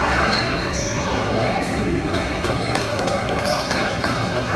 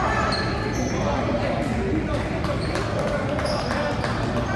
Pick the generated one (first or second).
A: first